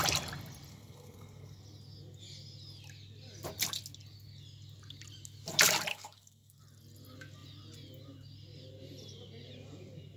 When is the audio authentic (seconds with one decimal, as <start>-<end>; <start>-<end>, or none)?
0.0-0.7; 1.6-5.9; 6.6-10.2